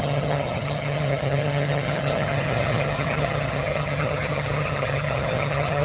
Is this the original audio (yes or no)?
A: no